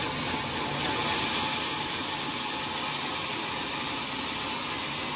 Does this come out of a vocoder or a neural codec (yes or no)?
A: no